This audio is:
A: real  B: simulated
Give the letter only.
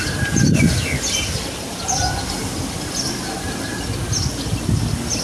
A